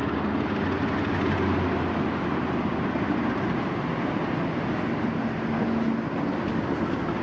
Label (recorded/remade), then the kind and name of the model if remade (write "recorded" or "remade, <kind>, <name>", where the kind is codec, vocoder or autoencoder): recorded